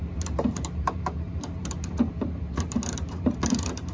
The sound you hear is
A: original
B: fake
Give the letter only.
B